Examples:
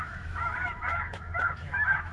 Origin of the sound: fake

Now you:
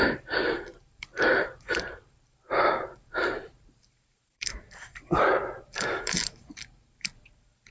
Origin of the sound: fake